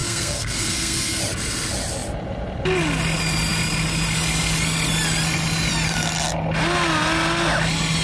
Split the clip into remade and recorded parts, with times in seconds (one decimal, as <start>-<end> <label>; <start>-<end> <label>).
0.0-1.2 remade; 1.2-8.0 recorded